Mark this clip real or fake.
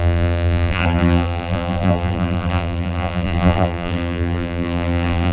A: fake